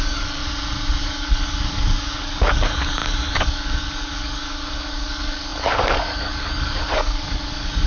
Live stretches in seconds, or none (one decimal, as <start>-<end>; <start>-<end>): 0.4-1.0